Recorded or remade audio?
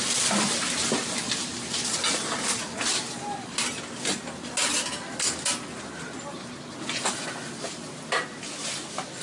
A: recorded